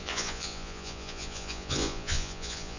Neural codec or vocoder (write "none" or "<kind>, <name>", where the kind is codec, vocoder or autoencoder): vocoder, Vocos